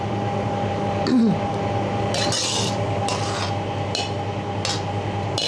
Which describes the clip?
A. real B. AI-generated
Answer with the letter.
A